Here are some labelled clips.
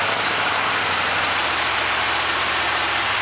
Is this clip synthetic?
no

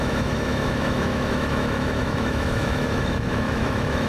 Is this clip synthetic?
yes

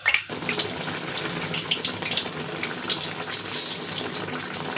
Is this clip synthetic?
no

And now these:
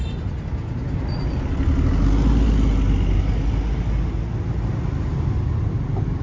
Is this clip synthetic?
no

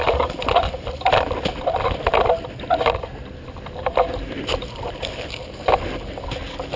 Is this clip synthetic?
no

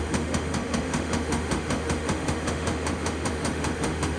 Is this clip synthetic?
yes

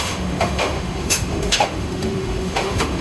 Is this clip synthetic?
yes